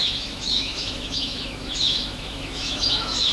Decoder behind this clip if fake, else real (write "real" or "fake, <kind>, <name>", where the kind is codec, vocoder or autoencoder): fake, autoencoder, DAC-VAE